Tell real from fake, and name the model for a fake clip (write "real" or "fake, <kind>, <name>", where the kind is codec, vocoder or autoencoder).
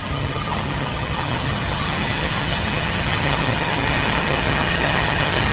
fake, vocoder, HiFi-GAN